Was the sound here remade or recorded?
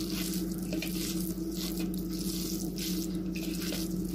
recorded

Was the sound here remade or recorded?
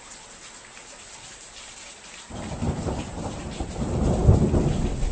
recorded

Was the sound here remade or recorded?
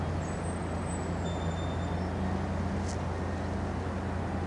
recorded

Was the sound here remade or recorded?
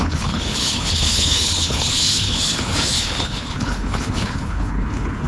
remade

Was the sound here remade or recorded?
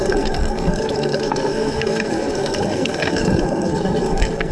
remade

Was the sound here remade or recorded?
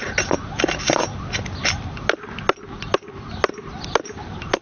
recorded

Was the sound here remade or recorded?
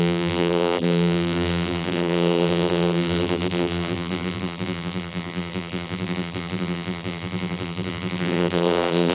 remade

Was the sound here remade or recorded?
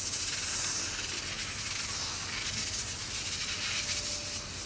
recorded